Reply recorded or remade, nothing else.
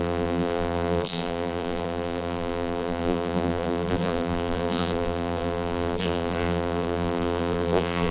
remade